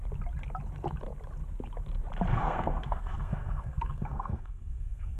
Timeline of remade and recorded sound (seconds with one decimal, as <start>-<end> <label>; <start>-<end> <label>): 0.0-2.3 recorded; 2.3-5.2 remade